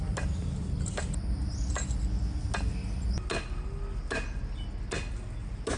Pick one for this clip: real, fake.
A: real